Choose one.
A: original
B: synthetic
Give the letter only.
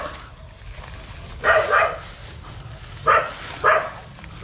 A